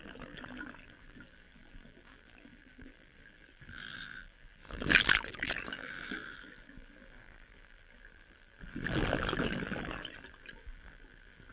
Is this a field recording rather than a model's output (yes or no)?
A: no